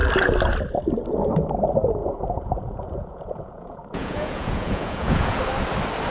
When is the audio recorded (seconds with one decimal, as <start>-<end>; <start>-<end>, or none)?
0.0-2.0; 5.4-6.1